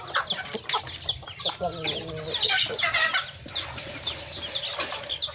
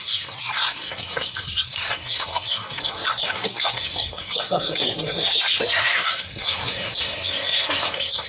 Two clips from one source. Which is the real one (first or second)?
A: first